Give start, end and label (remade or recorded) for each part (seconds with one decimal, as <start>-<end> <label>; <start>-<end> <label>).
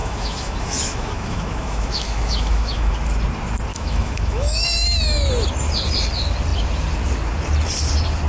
0.0-2.9 remade; 2.9-3.7 recorded; 3.7-5.3 remade; 5.3-8.3 recorded